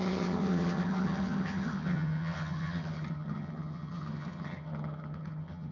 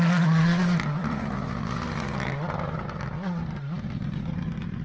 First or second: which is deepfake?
first